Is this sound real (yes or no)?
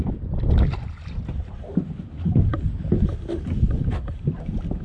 no